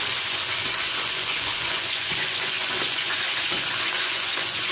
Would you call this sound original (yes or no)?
no